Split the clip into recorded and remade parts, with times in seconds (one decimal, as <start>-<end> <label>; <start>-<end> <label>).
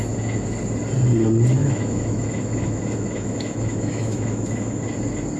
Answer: 0.0-1.6 recorded; 1.6-4.8 remade; 4.8-5.4 recorded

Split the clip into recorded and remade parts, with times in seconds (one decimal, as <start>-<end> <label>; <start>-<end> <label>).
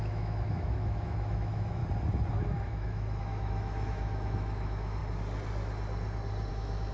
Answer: 0.0-1.8 remade; 1.8-2.3 recorded; 2.3-5.0 remade; 5.0-6.5 recorded; 6.5-6.9 remade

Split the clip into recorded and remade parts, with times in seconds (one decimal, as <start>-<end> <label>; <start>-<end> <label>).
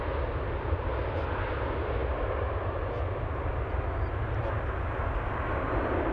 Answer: 0.0-6.1 recorded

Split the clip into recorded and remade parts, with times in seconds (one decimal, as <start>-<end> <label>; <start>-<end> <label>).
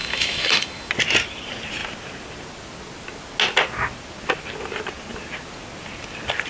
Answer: 0.0-0.9 remade; 0.9-6.5 recorded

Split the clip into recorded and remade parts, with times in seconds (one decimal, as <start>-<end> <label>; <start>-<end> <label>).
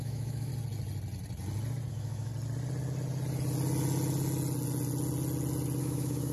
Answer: 0.0-0.5 remade; 0.5-1.9 recorded; 1.9-2.3 remade; 2.3-5.8 recorded; 5.8-6.3 remade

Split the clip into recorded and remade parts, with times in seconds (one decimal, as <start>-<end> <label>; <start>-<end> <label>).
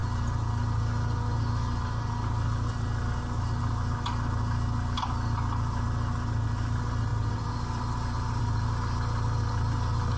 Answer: 0.0-10.2 recorded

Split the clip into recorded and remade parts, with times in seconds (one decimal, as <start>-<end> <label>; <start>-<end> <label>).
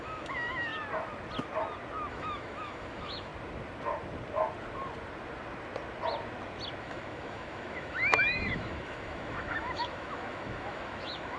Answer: 0.0-0.7 remade; 0.7-2.1 recorded; 2.1-3.3 remade; 3.3-6.8 recorded; 6.8-11.4 remade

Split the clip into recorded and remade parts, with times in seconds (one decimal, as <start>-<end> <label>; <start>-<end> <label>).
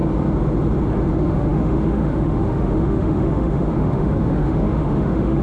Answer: 0.0-1.1 recorded; 1.1-5.4 remade